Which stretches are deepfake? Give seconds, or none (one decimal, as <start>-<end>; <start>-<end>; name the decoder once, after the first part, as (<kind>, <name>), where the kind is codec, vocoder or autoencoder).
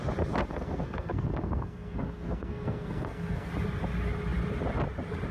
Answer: 0.5-3.5 (codec, SNAC)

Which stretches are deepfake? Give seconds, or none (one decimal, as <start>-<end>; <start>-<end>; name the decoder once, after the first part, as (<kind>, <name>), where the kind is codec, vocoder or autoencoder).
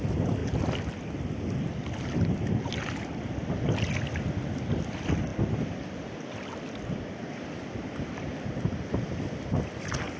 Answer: none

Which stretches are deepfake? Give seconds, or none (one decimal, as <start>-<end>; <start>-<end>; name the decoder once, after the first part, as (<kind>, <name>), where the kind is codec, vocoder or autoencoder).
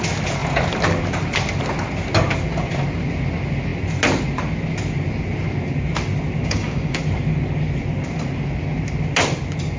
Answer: 6.4-7.0 (codec, DAC)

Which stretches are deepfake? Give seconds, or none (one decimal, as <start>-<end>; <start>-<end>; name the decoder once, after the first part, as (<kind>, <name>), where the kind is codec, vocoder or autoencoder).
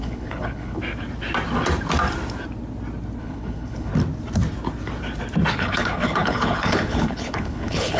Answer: 0.0-0.8 (codec, HILCodec); 3.2-3.9; 5.5-8.0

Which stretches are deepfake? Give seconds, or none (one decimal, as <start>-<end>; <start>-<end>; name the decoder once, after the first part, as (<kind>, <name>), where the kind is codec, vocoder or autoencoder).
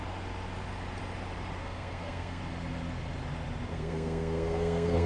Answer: 1.6-2.4 (codec, SNAC); 3.7-5.1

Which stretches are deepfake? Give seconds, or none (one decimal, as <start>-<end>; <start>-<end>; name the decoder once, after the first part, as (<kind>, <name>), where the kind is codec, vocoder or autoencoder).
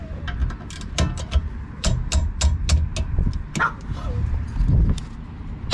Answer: none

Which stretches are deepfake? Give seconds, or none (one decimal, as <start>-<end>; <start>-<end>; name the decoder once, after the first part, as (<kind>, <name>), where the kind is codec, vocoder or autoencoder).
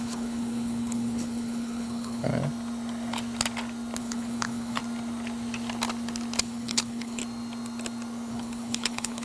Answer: 0.0-2.3 (codec, HILCodec); 4.0-4.8; 6.4-7.2; 8.3-9.2